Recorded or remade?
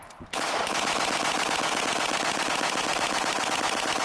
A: recorded